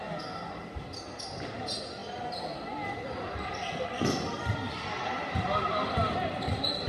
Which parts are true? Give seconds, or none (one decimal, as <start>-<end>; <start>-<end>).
0.0-6.9